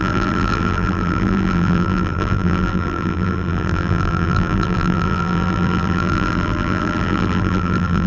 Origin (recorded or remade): remade